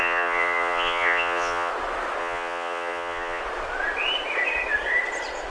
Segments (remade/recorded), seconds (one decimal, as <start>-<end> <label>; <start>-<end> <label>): 0.0-1.7 remade; 1.7-2.2 recorded; 2.2-3.4 remade; 3.4-5.5 recorded